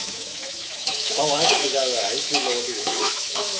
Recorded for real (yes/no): no